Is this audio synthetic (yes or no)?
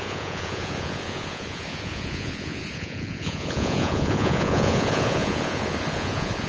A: yes